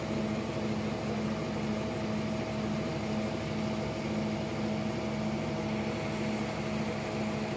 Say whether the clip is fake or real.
real